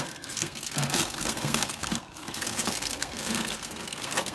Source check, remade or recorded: remade